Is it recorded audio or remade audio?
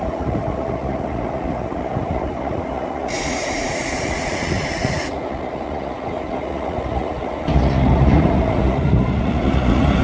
remade